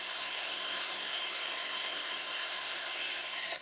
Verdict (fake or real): fake